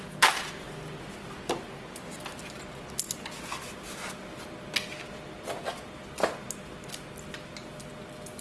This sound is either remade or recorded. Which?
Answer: recorded